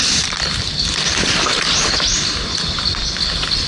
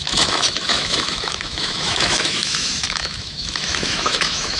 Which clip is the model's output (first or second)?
second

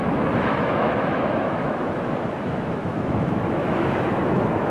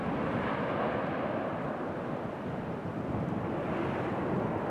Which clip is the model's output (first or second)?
first